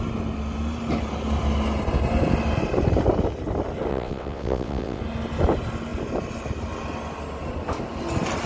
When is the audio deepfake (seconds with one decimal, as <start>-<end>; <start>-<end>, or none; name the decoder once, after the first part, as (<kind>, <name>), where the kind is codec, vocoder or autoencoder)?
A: 3.9-5.0 (vocoder, WaveNeXt)